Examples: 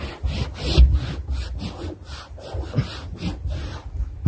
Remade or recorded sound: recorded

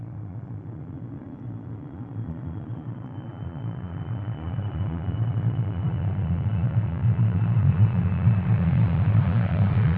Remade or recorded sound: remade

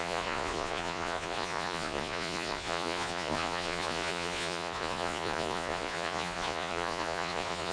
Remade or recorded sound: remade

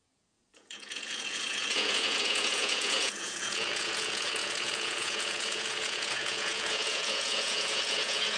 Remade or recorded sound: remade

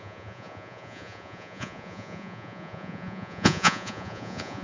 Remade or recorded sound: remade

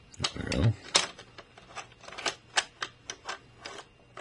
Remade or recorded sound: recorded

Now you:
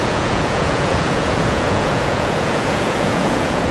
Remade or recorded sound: remade